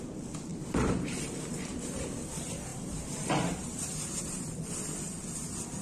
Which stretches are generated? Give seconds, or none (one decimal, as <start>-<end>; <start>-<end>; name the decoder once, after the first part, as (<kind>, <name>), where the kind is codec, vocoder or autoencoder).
0.5-2.1 (vocoder, BigVGAN v2); 2.7-4.6

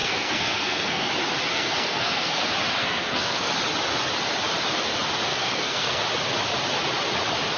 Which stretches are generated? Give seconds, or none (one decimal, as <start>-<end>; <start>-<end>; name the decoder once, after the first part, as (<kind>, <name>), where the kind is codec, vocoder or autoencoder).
0.0-1.1 (codec, SNAC); 1.5-2.4; 2.8-3.5; 5.3-6.0

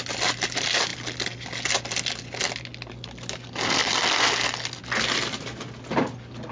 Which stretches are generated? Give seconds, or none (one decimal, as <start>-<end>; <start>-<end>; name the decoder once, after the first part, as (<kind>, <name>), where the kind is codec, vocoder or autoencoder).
none

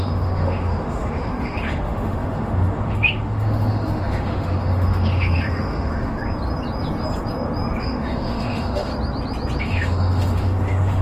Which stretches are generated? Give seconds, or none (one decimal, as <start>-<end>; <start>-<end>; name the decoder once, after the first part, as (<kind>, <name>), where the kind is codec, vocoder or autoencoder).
0.0-6.2 (autoencoder, DAC-VAE); 7.8-8.9; 9.6-11.0

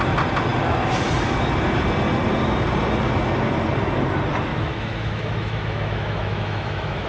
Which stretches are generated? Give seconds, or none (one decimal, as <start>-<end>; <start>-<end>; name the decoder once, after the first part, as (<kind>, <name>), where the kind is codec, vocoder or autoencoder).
4.5-7.1 (autoencoder, DAC-VAE)

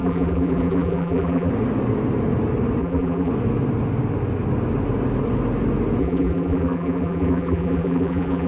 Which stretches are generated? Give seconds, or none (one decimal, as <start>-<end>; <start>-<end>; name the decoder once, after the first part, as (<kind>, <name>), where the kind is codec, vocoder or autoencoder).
0.0-1.5 (vocoder, BigVGAN v2); 2.8-3.3; 6.0-8.5

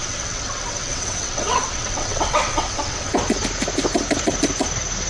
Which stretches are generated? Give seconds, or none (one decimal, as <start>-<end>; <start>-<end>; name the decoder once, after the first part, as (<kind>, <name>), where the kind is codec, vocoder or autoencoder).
0.0-3.1 (vocoder, WaveNeXt)

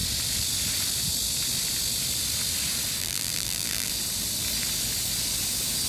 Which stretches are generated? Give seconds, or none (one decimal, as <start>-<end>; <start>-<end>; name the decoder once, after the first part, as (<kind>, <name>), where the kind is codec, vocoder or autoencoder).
3.0-3.9 (vocoder, BigVGAN v2)